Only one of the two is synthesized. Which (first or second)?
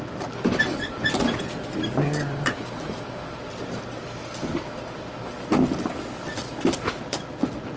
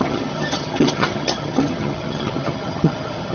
second